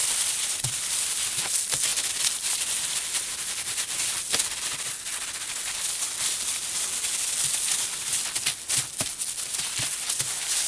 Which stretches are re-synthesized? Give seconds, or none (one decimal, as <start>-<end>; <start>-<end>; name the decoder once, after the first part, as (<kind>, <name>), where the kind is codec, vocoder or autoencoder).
none